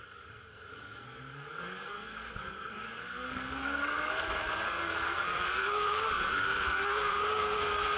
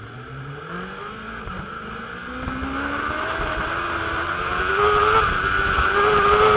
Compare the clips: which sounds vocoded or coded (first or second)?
first